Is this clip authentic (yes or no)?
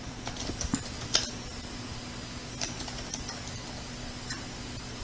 yes